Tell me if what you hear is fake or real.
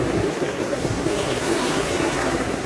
fake